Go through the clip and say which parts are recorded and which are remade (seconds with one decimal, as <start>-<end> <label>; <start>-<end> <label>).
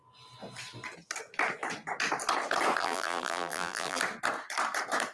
0.0-2.8 recorded; 2.8-4.0 remade; 4.0-5.1 recorded